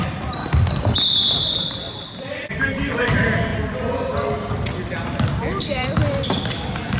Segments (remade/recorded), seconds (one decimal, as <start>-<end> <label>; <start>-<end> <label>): 0.0-0.5 remade; 0.5-1.8 recorded; 1.8-3.5 remade; 3.5-5.6 recorded; 5.6-7.0 remade